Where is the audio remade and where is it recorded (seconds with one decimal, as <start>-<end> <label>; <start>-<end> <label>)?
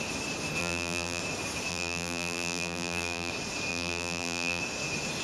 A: 0.0-0.6 recorded; 0.6-1.2 remade; 1.2-1.7 recorded; 1.7-3.3 remade; 3.3-3.7 recorded; 3.7-4.6 remade; 4.6-5.2 recorded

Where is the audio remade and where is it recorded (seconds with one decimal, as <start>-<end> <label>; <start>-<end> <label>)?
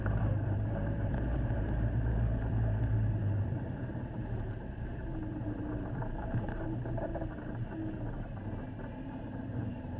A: 0.0-7.1 remade; 7.1-8.2 recorded; 8.2-10.0 remade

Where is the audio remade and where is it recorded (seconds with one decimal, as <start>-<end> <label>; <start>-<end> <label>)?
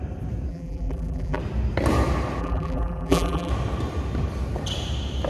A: 0.0-0.5 recorded; 0.5-1.4 remade; 1.4-2.4 recorded; 2.4-3.5 remade; 3.5-5.3 recorded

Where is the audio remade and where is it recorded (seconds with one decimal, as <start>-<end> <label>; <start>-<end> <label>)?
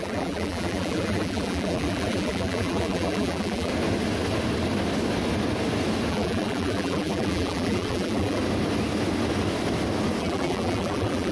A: 0.0-3.7 remade; 3.7-6.1 recorded; 6.1-8.4 remade; 8.4-10.2 recorded; 10.2-11.3 remade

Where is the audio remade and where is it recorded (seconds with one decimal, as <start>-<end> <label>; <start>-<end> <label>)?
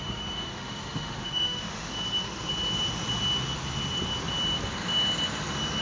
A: 0.0-1.9 remade; 1.9-5.8 recorded